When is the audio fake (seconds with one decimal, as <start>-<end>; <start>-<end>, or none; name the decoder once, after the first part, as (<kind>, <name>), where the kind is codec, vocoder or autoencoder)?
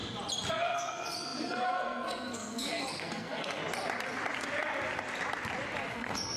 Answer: 0.5-3.6 (codec, SNAC); 5.9-6.4